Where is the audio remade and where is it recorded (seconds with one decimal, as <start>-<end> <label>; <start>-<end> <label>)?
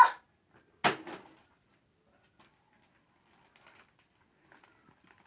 0.0-5.3 recorded